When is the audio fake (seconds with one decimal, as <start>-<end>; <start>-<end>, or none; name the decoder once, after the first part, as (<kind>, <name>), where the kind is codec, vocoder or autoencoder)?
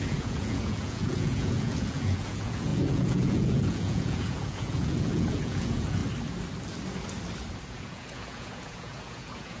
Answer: 0.0-6.0 (vocoder, Vocos); 7.7-9.6